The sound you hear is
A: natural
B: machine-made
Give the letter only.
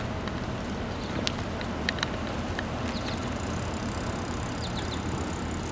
A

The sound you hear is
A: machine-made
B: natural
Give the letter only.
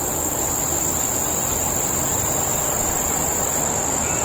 B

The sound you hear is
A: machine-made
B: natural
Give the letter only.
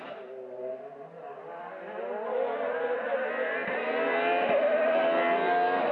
B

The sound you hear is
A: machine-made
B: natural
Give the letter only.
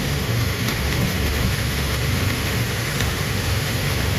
A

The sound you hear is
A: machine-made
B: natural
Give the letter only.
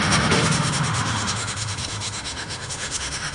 A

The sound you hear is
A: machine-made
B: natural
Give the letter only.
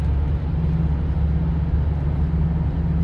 B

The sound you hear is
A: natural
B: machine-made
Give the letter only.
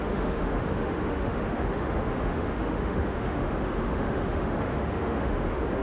B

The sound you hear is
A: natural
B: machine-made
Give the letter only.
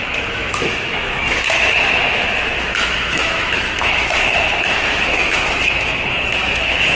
B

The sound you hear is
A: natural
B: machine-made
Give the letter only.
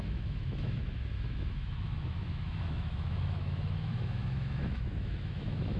B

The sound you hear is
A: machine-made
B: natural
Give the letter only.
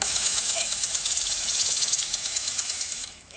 A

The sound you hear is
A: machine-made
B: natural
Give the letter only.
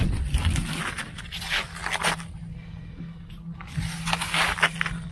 B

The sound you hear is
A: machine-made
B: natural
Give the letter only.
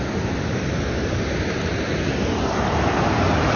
B